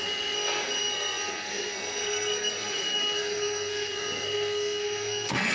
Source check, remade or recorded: remade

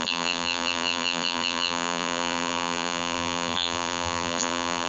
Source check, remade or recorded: remade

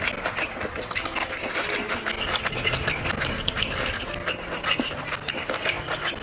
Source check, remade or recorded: recorded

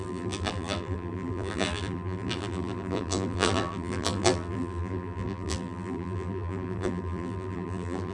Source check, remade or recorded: remade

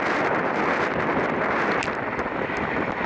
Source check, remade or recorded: recorded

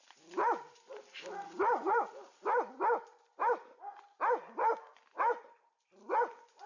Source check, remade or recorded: recorded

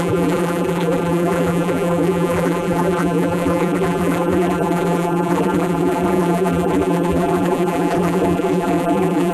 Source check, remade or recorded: remade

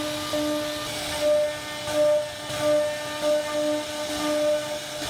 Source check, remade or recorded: recorded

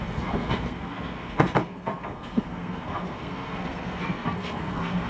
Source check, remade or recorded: remade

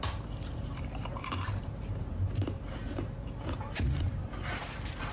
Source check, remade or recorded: remade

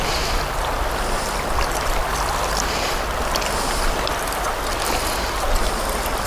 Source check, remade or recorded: recorded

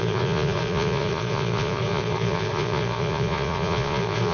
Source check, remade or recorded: remade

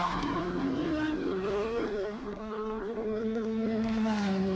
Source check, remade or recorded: remade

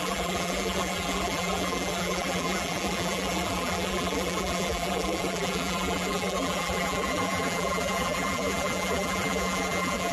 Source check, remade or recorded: remade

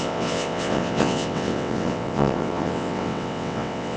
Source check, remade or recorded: remade